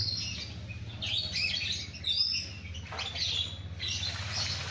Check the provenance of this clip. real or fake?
real